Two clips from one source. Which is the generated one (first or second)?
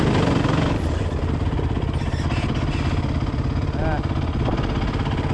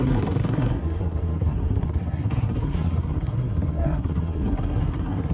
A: second